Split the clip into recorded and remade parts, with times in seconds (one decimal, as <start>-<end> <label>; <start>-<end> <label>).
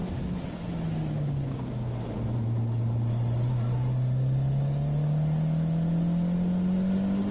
0.0-7.3 recorded